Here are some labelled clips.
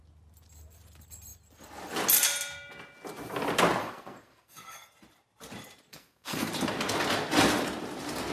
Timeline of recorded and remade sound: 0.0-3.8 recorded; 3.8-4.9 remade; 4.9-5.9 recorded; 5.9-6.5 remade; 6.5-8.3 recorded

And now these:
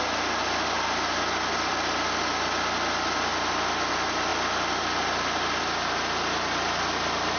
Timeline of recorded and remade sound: 0.0-7.4 recorded

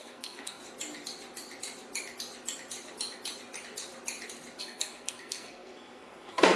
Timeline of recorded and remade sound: 0.0-0.6 remade; 0.6-4.6 recorded; 4.6-6.6 remade